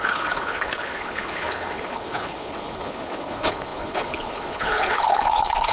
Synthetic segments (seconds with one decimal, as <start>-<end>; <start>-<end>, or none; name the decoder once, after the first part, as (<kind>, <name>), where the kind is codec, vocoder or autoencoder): 0.0-5.7 (codec, HILCodec)